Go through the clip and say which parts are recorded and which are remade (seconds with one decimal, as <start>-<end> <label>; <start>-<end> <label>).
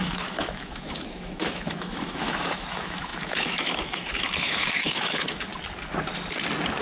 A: 0.0-5.5 remade; 5.5-6.8 recorded